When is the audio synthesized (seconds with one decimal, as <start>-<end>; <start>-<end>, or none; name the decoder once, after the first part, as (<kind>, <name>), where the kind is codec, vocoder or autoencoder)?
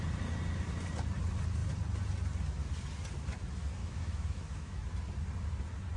3.8-4.8 (autoencoder, DAC-VAE)